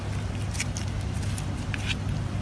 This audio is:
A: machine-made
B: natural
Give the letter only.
B